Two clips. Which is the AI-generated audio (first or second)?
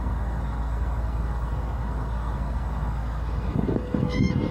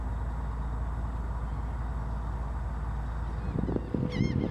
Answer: first